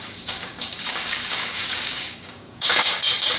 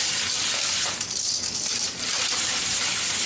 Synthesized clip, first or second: first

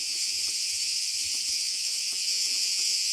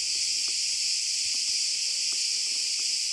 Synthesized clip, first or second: first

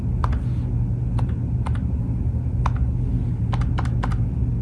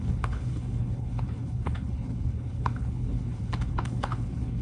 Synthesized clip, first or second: second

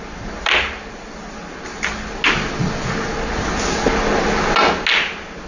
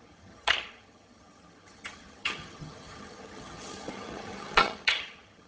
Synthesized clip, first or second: second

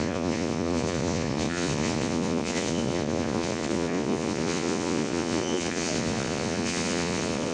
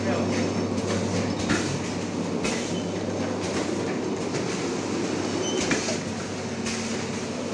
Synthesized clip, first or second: first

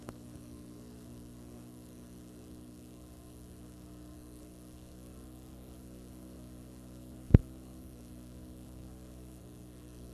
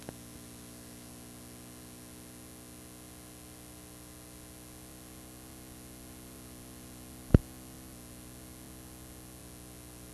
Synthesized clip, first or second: first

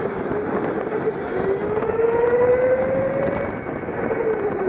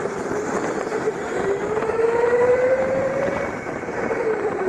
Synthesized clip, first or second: second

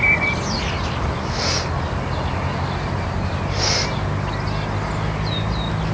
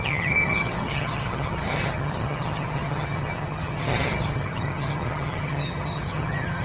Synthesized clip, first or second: second